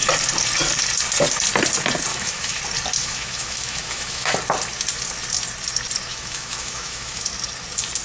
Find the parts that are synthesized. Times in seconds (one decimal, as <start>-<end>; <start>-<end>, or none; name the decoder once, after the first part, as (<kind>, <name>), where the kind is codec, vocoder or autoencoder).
2.1-2.6 (autoencoder, DAC-VAE); 3.0-4.3; 6.1-7.2